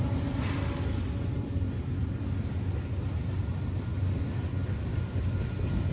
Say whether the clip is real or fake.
real